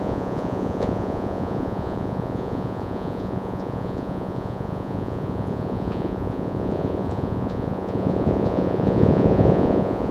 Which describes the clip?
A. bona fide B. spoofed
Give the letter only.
B